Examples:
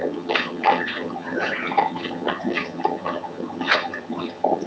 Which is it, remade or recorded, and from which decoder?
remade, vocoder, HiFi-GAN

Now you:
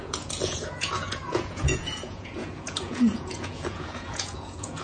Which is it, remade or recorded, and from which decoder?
remade, vocoder, Vocos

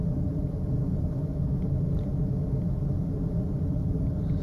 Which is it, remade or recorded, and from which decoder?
recorded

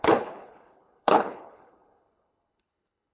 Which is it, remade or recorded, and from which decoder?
remade, codec, HILCodec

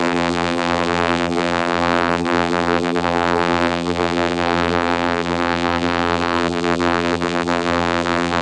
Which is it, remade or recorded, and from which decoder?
remade, vocoder, BigVGAN v2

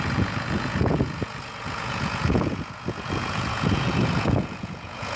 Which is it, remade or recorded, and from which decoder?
remade, vocoder, Vocos